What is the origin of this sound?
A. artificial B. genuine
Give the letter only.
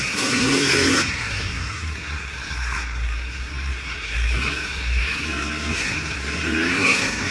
A